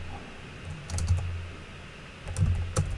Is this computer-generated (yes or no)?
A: no